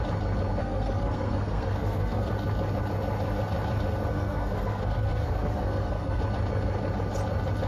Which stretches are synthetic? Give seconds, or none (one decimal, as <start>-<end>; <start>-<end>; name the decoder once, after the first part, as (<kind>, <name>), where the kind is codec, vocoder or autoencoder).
0.6-2.3 (codec, SNAC); 4.1-6.2